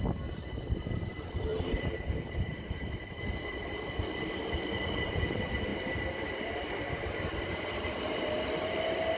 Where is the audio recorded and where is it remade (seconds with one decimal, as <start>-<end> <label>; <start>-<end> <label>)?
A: 0.0-1.5 recorded; 1.5-2.9 remade; 2.9-9.2 recorded